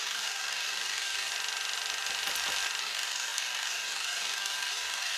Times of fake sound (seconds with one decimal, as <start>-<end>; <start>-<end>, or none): 0.0-1.3; 2.8-5.2